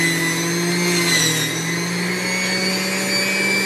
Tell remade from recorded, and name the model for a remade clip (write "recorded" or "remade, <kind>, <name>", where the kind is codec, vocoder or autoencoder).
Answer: recorded